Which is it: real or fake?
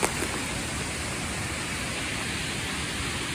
real